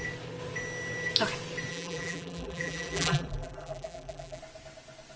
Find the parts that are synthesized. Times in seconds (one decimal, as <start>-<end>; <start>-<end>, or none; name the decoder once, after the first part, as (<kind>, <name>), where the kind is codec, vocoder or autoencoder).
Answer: 1.7-4.4 (vocoder, BigVGAN v2)